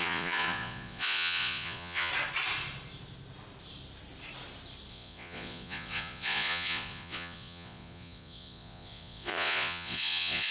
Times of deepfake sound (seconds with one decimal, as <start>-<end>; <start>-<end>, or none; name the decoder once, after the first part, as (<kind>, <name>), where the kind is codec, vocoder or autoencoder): 0.0-2.1 (vocoder, Vocos); 4.9-10.5